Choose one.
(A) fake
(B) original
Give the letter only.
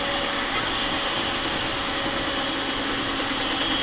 B